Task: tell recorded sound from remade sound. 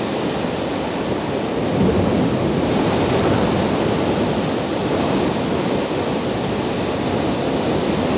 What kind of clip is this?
recorded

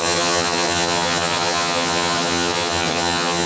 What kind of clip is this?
remade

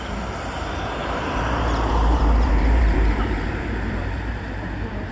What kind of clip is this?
remade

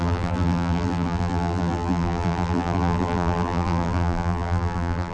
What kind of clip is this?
remade